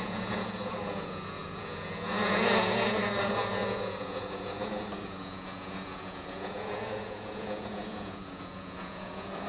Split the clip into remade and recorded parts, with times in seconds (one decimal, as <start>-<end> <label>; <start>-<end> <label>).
0.0-9.5 remade